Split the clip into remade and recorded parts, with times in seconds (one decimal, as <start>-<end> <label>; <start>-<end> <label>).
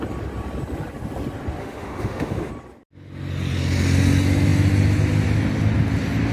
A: 0.0-1.6 recorded; 1.6-2.5 remade; 2.5-6.3 recorded